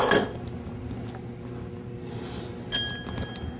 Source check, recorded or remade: recorded